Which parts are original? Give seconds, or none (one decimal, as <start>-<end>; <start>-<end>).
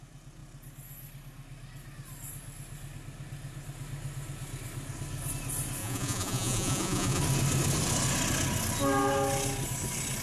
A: 0.0-5.8; 7.2-10.2